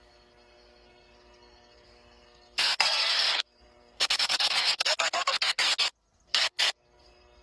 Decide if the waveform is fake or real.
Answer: fake